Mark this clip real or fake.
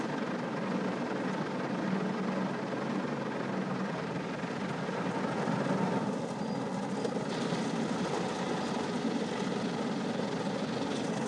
real